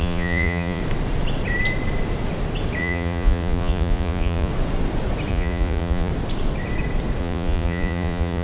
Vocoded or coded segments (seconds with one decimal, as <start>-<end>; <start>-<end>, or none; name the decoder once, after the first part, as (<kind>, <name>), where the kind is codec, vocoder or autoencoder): 0.0-0.8 (vocoder, Vocos); 2.8-4.5; 5.3-6.1; 7.2-8.4